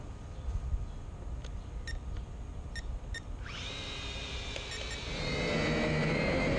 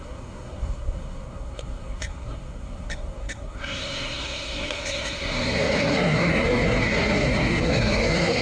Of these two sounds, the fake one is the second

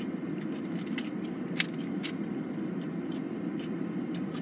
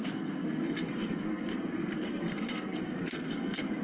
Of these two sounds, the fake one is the second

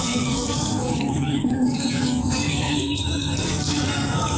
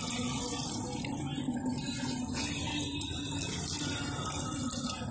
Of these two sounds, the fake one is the first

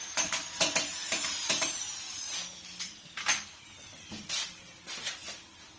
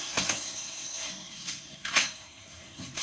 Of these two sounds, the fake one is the second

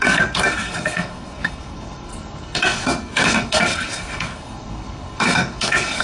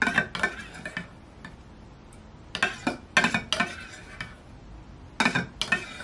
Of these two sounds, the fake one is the first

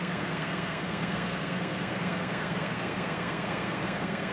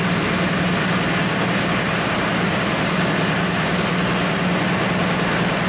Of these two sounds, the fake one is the first